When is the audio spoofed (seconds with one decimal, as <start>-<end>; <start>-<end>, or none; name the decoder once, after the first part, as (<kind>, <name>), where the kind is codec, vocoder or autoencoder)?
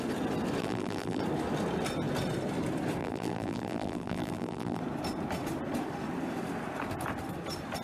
0.6-1.2 (vocoder, BigVGAN v2); 3.0-4.8